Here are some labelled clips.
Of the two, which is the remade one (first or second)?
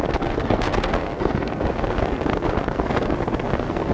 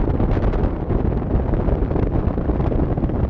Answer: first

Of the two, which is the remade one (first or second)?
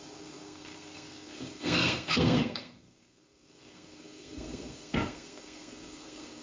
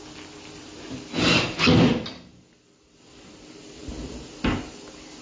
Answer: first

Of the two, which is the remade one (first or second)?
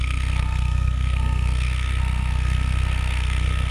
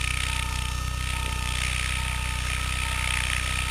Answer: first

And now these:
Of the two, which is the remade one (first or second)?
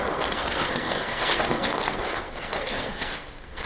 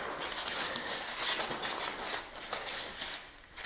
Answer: first